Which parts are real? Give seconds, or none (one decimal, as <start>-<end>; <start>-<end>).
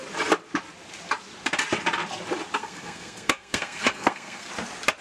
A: 0.0-2.6; 4.5-5.0